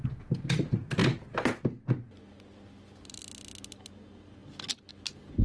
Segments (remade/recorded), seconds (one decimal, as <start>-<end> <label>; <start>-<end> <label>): 0.0-5.4 recorded